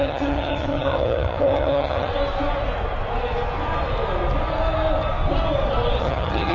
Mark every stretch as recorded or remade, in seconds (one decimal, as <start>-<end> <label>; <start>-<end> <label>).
0.0-2.1 remade; 2.1-6.0 recorded; 6.0-6.5 remade